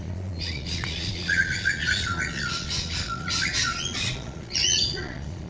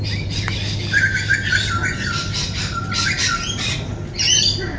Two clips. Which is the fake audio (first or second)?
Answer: first